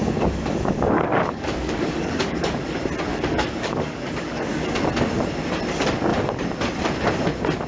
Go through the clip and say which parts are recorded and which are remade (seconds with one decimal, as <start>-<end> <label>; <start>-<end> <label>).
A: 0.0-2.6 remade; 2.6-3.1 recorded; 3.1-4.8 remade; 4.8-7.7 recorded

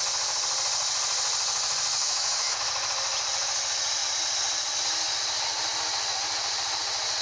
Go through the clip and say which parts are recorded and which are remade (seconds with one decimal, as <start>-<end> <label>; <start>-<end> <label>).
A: 0.0-2.0 recorded; 2.0-2.6 remade; 2.6-7.2 recorded

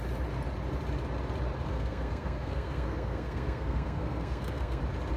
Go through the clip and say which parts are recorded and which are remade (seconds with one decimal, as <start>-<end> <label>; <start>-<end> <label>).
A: 0.0-1.7 recorded; 1.7-4.8 remade; 4.8-5.2 recorded

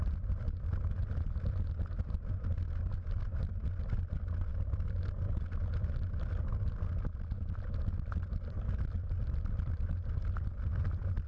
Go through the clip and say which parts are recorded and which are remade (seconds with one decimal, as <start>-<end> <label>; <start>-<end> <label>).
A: 0.0-11.3 recorded

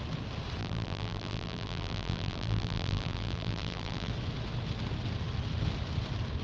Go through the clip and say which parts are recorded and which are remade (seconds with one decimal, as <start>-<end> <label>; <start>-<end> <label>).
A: 0.0-0.6 recorded; 0.6-4.1 remade; 4.1-6.4 recorded